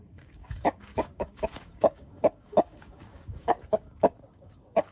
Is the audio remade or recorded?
remade